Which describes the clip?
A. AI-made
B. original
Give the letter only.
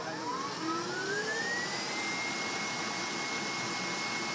B